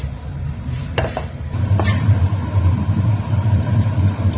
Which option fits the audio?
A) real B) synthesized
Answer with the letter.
B